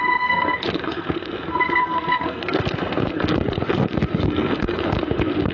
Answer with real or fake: fake